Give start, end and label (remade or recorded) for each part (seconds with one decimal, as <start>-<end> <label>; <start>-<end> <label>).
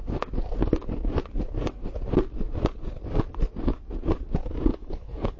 0.0-4.7 recorded; 4.7-5.4 remade